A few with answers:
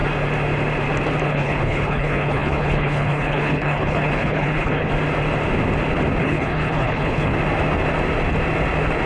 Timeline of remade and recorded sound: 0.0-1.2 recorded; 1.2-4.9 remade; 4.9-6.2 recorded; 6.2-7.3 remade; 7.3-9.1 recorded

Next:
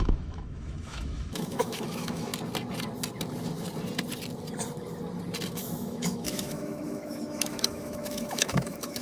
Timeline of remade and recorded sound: 0.0-2.3 remade; 2.3-5.5 recorded; 5.5-9.0 remade

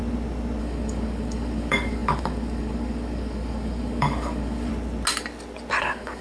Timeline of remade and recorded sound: 0.0-0.6 recorded; 0.6-4.7 remade; 4.7-5.8 recorded; 5.8-6.2 remade

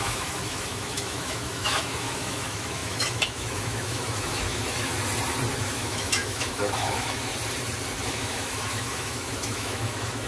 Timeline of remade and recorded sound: 0.0-4.9 remade; 4.9-5.6 recorded; 5.6-7.3 remade; 7.3-8.1 recorded; 8.1-10.3 remade

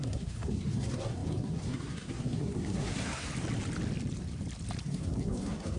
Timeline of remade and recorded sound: 0.0-3.3 remade; 3.3-4.8 recorded; 4.8-5.8 remade